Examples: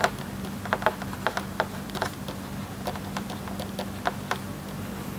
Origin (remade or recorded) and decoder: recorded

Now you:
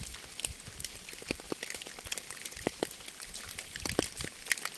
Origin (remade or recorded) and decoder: recorded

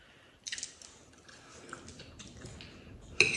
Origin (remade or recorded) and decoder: remade, vocoder, BigVGAN v2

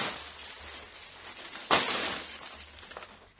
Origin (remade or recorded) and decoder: recorded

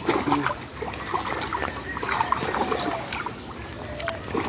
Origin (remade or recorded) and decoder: remade, vocoder, BigVGAN v2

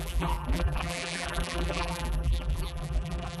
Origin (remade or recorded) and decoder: remade, vocoder, BigVGAN v2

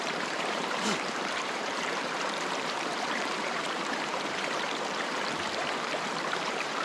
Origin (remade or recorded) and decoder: remade, vocoder, BigVGAN v2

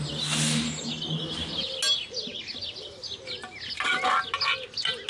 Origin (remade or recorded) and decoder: recorded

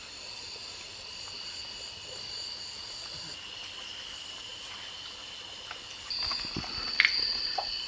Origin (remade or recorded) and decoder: recorded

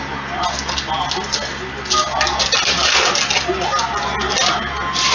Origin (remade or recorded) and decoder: recorded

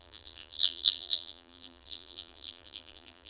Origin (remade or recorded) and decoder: remade, vocoder, BigVGAN v2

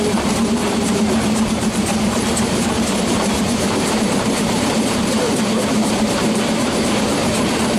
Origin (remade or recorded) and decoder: remade, vocoder, BigVGAN v2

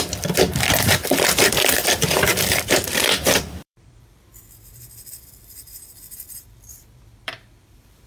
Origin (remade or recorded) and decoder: remade, vocoder, BigVGAN v2